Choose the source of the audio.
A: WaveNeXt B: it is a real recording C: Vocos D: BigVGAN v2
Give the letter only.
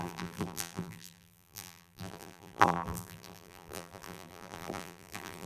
D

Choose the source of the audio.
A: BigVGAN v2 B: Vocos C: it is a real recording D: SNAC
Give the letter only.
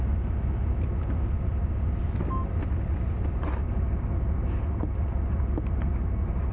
C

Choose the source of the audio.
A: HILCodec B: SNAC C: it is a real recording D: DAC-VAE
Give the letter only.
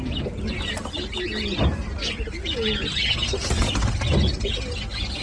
C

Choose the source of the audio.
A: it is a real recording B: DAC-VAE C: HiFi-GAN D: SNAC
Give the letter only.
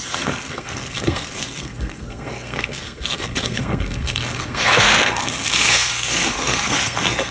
D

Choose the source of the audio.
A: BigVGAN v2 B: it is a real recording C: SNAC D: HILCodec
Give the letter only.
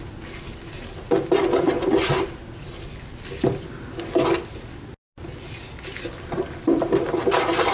B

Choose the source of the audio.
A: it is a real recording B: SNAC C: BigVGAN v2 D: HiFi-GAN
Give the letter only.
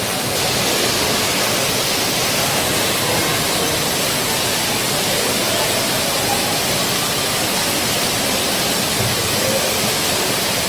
A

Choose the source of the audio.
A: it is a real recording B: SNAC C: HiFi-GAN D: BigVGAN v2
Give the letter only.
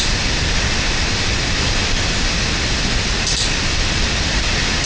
D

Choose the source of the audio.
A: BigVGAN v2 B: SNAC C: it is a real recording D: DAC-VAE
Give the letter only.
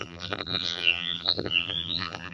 A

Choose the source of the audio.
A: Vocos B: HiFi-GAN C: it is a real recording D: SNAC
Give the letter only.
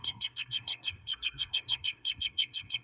D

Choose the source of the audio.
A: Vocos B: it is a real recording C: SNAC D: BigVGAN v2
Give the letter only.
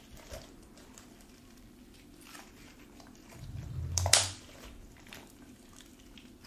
D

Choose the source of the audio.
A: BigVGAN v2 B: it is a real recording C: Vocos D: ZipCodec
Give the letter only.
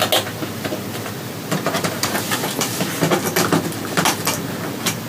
B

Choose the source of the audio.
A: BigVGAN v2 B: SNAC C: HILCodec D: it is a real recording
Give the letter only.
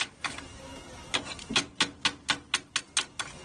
D